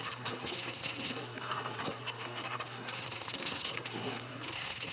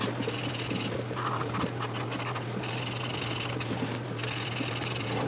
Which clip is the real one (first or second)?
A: second